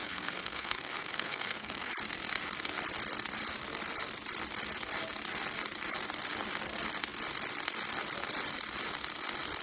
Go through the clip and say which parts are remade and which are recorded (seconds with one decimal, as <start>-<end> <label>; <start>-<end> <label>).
0.0-1.9 remade; 1.9-9.6 recorded